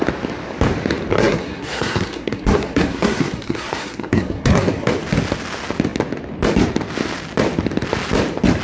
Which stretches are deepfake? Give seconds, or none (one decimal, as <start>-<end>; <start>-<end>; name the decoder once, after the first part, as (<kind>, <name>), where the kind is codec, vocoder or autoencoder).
1.1-4.9 (codec, SNAC)